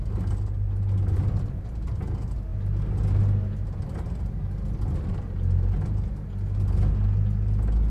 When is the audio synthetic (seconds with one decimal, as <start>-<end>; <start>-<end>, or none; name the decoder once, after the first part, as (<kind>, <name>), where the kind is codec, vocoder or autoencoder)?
none